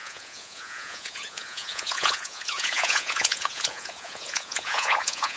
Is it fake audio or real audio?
fake